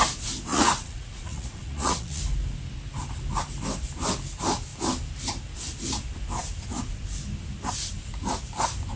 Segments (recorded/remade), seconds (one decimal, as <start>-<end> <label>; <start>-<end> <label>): 0.0-0.5 recorded; 0.5-2.2 remade; 2.2-9.0 recorded